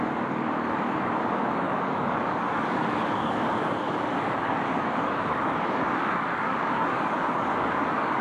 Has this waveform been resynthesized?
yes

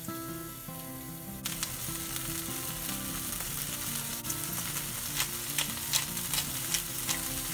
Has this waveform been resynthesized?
no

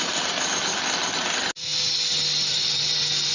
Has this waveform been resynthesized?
no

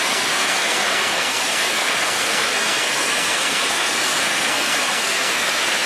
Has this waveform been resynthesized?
yes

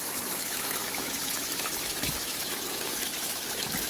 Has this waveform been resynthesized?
yes